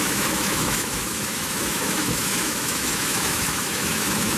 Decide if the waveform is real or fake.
fake